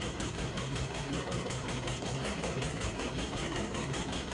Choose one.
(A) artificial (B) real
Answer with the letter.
A